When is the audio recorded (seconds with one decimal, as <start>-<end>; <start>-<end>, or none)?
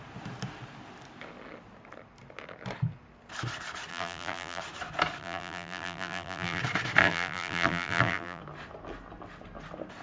0.0-3.9; 4.6-5.2; 6.6-7.0; 8.4-10.0